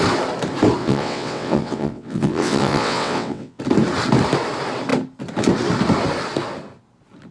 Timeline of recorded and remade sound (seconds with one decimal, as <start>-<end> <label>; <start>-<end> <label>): 0.0-0.8 recorded; 0.8-3.6 remade; 3.6-7.3 recorded